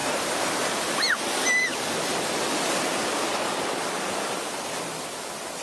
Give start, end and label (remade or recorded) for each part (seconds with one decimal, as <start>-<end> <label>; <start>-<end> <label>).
0.0-0.9 remade; 0.9-5.6 recorded

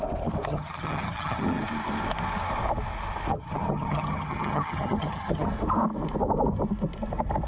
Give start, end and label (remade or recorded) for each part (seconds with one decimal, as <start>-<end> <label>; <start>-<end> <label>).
0.0-0.5 recorded; 0.5-1.6 remade; 1.6-3.3 recorded; 3.3-5.5 remade; 5.5-7.5 recorded

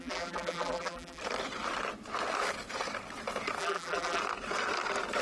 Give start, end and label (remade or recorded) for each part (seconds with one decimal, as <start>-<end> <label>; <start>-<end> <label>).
0.0-1.2 remade; 1.2-3.6 recorded; 3.6-4.2 remade; 4.2-5.2 recorded

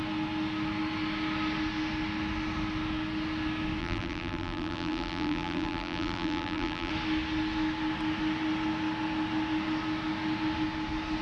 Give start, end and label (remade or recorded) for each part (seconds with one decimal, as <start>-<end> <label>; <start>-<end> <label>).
0.0-3.8 recorded; 3.8-6.9 remade; 6.9-11.2 recorded

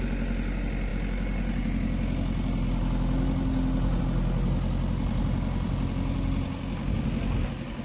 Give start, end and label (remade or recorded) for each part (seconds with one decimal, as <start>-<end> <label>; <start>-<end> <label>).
0.0-7.8 recorded

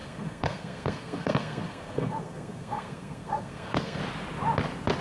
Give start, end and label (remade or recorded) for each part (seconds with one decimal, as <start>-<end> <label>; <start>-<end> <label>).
0.0-4.0 remade; 4.0-5.0 recorded

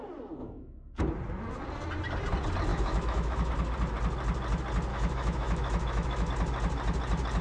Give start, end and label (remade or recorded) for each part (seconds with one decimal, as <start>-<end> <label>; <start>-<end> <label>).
0.0-0.4 recorded; 0.4-1.0 remade; 1.0-2.7 recorded; 2.7-3.5 remade; 3.5-4.9 recorded; 4.9-6.3 remade; 6.3-7.4 recorded